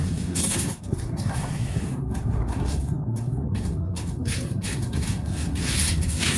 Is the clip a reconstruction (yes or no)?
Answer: yes